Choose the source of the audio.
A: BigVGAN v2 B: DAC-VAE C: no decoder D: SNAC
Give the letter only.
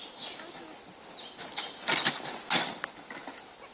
C